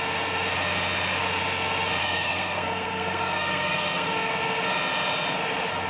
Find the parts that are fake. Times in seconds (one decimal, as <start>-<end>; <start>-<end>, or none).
2.0-4.3